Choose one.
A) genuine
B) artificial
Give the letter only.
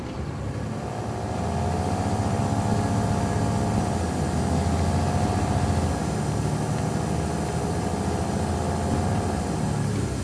A